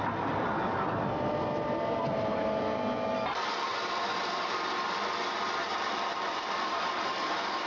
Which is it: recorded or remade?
remade